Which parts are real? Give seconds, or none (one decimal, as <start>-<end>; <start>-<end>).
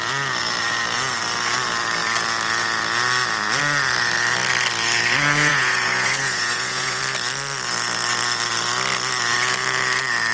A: 0.0-5.5; 7.0-10.3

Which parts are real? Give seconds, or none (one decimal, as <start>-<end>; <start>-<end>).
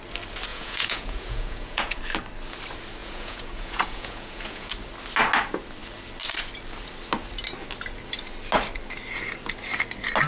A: 0.0-0.5; 2.0-3.0; 4.7-10.3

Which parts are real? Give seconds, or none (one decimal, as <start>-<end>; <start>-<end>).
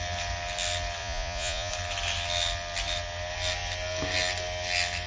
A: 0.0-1.0; 1.7-5.1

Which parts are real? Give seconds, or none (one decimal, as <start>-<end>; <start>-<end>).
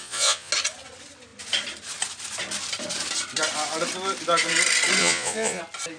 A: 0.5-5.0; 5.6-6.0